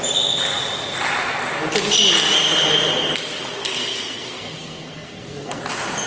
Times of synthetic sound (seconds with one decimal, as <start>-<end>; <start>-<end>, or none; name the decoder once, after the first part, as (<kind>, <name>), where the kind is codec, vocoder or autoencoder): 3.6-5.6 (codec, SNAC)